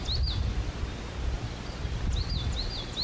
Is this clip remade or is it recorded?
recorded